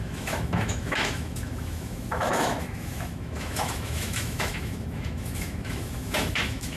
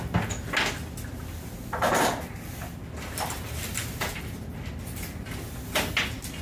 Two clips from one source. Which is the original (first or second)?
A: second